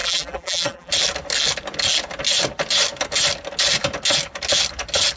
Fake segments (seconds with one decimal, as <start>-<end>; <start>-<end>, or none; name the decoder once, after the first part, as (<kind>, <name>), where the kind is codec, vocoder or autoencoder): 0.0-0.9 (vocoder, BigVGAN v2)